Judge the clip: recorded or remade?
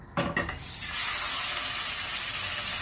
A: recorded